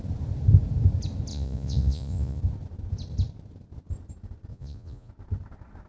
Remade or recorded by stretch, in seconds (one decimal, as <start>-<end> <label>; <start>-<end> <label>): 0.0-1.3 recorded; 1.3-2.4 remade; 2.4-4.5 recorded; 4.5-5.1 remade; 5.1-5.9 recorded